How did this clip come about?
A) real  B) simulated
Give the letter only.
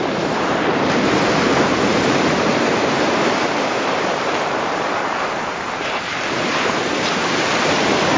B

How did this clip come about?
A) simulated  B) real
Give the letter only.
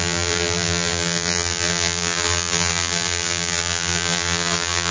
A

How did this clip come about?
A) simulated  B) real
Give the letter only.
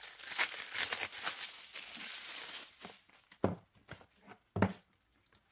B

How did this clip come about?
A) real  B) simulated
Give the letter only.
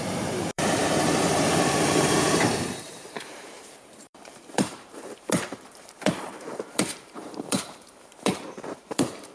B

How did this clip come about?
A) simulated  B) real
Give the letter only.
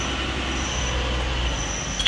B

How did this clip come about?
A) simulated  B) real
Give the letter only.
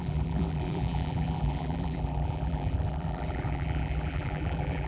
A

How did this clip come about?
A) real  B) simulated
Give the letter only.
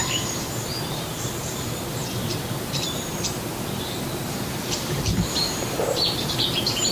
B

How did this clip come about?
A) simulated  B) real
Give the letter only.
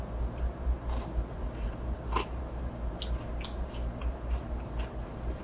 A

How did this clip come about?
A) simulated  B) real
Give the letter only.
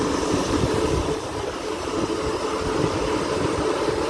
A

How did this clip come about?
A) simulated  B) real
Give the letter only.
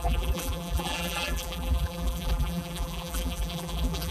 A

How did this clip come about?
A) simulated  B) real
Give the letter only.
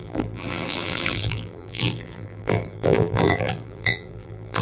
A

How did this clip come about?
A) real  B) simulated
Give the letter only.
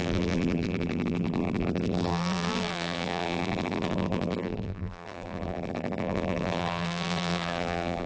B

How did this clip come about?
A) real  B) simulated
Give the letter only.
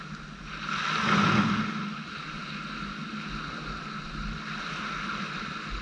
A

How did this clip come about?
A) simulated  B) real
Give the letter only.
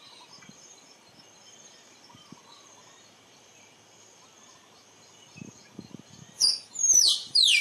A